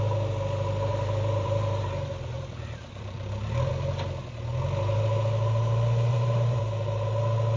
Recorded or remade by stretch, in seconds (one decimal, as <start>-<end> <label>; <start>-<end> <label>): 0.0-0.9 recorded; 0.9-3.7 remade; 3.7-6.1 recorded; 6.1-6.6 remade; 6.6-7.6 recorded